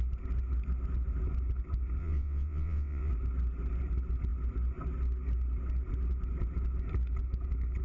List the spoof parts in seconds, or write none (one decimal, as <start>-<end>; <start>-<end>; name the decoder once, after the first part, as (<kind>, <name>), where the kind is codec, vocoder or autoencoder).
2.0-3.1 (vocoder, WaveNeXt)